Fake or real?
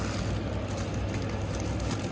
real